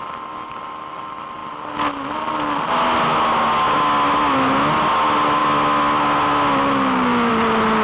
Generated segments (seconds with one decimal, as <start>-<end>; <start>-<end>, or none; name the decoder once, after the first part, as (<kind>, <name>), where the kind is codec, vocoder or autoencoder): none